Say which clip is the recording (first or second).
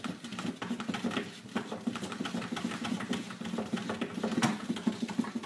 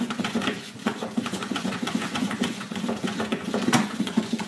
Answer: first